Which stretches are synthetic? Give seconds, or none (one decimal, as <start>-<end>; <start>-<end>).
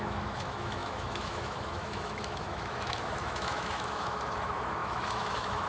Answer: 0.0-5.7